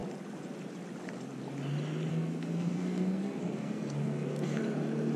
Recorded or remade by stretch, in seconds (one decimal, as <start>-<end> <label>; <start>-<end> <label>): 0.0-2.1 recorded; 2.1-4.6 remade; 4.6-5.2 recorded